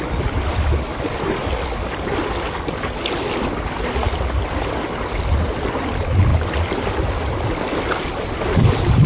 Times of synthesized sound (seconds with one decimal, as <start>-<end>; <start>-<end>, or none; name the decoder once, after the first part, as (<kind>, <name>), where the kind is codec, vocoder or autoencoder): none